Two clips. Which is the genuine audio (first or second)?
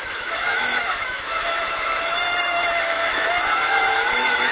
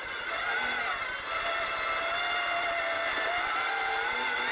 second